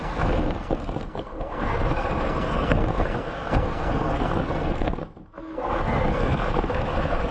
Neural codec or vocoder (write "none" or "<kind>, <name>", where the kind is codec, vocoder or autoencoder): codec, SNAC